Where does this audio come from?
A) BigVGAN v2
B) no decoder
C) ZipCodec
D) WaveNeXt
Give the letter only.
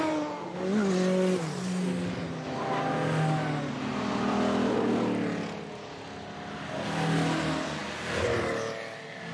B